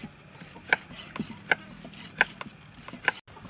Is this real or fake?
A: real